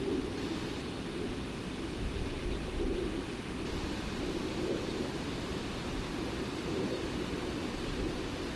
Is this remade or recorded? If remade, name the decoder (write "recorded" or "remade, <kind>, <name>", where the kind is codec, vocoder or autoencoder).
recorded